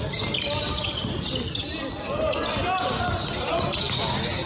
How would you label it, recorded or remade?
recorded